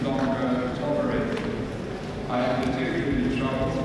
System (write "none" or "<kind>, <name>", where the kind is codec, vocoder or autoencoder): none